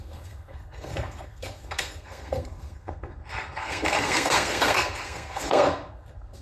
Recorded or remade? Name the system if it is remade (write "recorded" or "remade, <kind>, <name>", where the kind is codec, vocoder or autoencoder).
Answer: remade, codec, SNAC